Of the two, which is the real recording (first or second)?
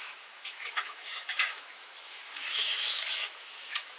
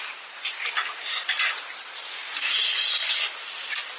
second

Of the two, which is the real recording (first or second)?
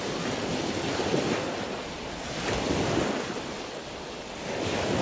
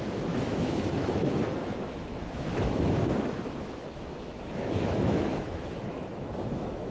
first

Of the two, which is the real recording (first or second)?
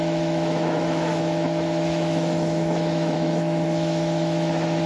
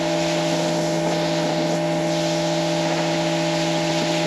second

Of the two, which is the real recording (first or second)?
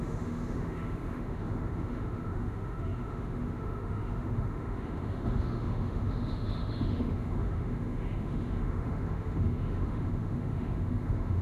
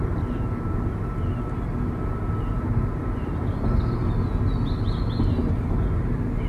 second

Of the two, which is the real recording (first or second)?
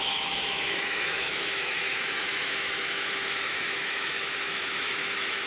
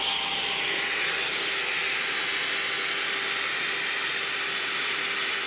second